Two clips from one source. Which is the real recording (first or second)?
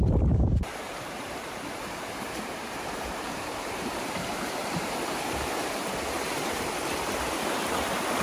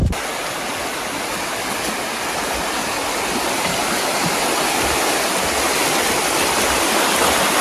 second